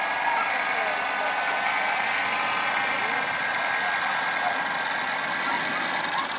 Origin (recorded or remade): recorded